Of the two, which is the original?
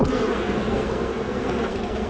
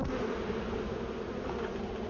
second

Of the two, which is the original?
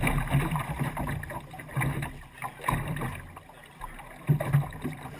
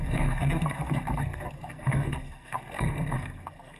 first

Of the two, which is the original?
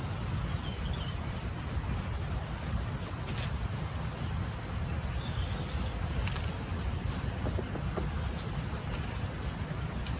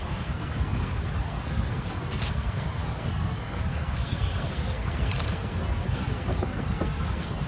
first